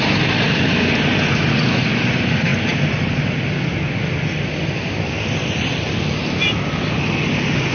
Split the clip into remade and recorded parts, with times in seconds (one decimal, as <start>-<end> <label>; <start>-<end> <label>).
0.0-7.7 recorded